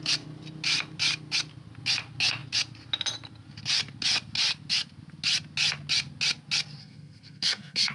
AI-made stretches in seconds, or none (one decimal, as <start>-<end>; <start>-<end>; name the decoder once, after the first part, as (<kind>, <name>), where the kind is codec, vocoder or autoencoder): 6.8-7.9 (codec, SNAC)